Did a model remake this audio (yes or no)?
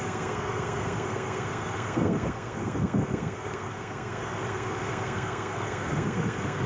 yes